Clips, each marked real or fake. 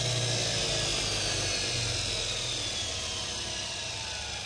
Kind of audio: real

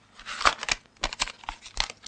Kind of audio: real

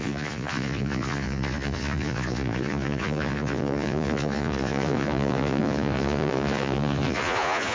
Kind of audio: fake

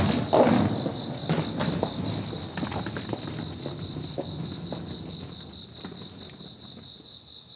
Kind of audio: real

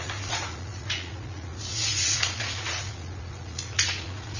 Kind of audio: fake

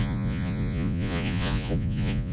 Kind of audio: fake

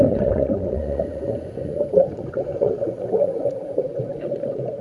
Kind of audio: fake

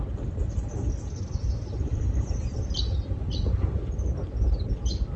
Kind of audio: real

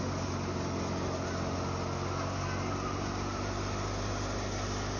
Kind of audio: real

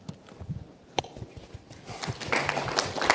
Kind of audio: real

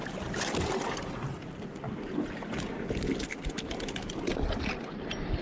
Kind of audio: real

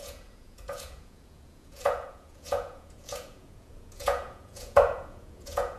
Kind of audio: fake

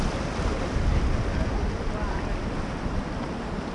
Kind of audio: real